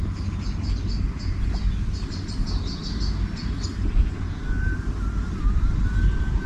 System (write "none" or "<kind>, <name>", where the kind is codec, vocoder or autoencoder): none